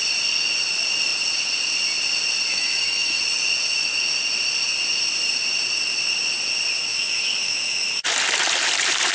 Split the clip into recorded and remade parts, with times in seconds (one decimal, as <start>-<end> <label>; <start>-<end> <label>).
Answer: 0.0-2.5 recorded; 2.5-3.2 remade; 3.2-6.9 recorded; 6.9-7.9 remade; 7.9-9.1 recorded